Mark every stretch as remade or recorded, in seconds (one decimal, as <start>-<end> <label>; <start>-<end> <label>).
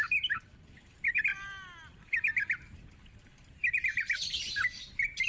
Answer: 0.0-5.3 recorded